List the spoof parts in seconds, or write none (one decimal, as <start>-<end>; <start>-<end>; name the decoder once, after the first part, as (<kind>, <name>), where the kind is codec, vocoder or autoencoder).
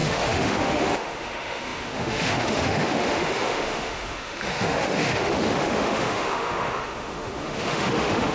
0.0-8.3 (autoencoder, DAC-VAE)